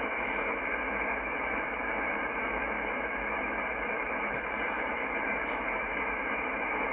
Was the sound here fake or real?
fake